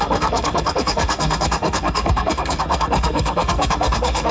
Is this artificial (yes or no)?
yes